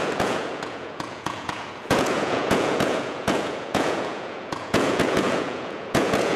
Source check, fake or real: fake